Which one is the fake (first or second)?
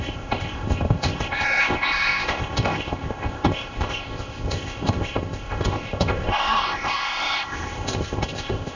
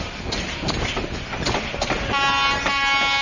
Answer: first